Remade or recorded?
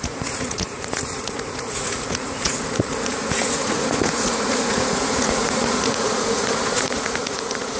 remade